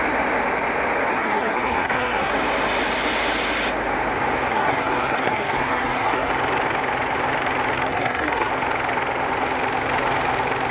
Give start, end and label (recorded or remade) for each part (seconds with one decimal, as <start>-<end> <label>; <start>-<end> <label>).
0.0-1.1 recorded; 1.1-2.3 remade; 2.3-4.5 recorded; 4.5-6.3 remade; 6.3-7.9 recorded; 7.9-8.5 remade; 8.5-10.7 recorded

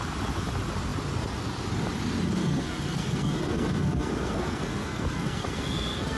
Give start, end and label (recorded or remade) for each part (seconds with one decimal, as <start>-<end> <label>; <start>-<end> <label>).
0.0-2.4 recorded; 2.4-6.2 remade

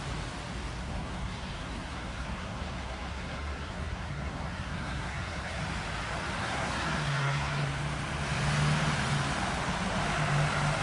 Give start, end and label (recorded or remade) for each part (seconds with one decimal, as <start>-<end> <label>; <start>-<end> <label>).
0.0-0.8 recorded; 0.8-5.6 remade; 5.6-6.4 recorded; 6.4-7.7 remade; 7.7-10.8 recorded

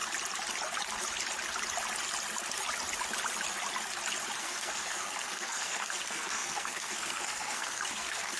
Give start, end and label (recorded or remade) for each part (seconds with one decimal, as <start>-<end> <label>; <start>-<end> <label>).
0.0-4.4 recorded; 4.4-8.4 remade

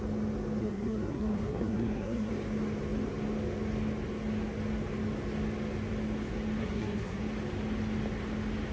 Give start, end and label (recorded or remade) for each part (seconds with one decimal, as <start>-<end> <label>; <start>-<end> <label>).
0.0-0.6 recorded; 0.6-2.3 remade; 2.3-6.6 recorded; 6.6-7.2 remade; 7.2-8.7 recorded

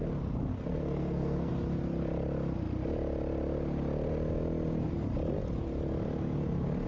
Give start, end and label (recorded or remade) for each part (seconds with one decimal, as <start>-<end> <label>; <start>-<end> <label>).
0.0-0.5 recorded; 0.5-1.5 remade; 1.5-6.9 recorded